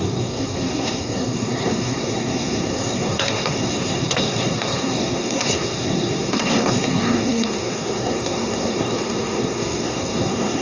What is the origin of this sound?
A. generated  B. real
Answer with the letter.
A